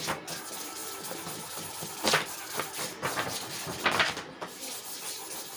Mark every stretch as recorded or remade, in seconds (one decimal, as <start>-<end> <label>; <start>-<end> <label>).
0.0-5.6 recorded

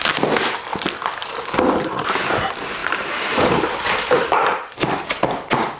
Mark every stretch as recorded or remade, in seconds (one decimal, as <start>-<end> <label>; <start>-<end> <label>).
0.0-2.8 recorded; 2.8-5.2 remade; 5.2-5.8 recorded

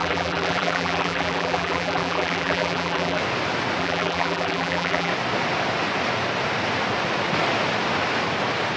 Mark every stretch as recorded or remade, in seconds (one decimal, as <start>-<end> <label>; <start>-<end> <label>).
0.0-3.2 remade; 3.2-3.8 recorded; 3.8-5.1 remade; 5.1-8.8 recorded